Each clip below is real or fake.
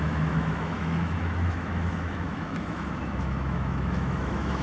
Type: fake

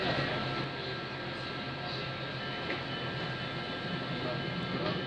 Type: real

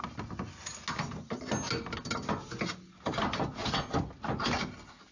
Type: real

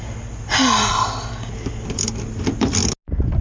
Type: real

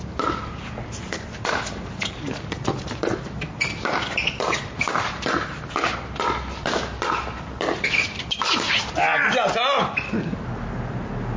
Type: real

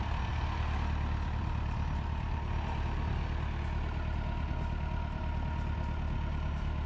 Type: real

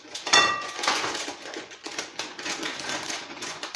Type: fake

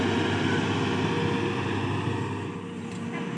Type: real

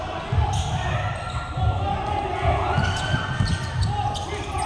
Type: real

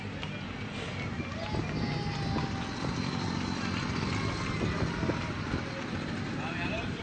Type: real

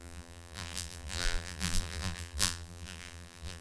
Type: fake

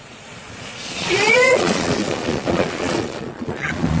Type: fake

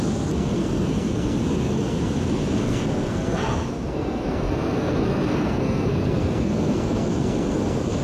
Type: fake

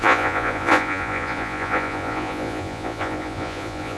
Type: fake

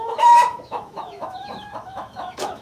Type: fake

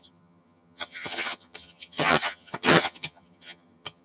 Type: fake